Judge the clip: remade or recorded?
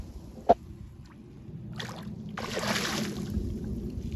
recorded